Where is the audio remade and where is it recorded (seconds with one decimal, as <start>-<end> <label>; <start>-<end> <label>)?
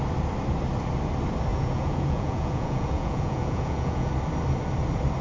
0.0-1.5 recorded; 1.5-4.1 remade; 4.1-5.2 recorded